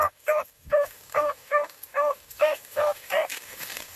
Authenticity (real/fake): fake